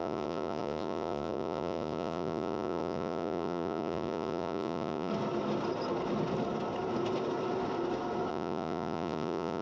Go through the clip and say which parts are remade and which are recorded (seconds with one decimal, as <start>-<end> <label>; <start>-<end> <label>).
0.0-5.1 remade; 5.1-8.3 recorded; 8.3-9.6 remade